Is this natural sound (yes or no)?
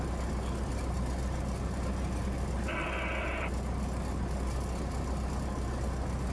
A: yes